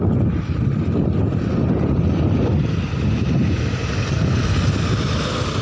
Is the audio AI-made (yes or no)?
no